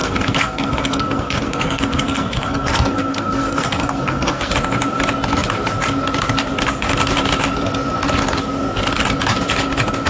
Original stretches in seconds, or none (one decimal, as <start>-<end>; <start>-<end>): 4.5-10.1